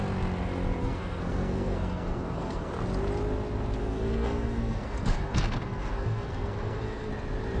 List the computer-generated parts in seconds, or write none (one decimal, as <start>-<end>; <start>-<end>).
0.8-2.7; 3.8-7.1